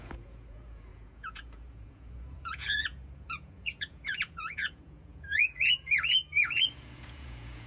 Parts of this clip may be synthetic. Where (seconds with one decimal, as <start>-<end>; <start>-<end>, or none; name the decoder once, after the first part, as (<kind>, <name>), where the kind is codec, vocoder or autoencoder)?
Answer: 0.0-7.7 (vocoder, Vocos)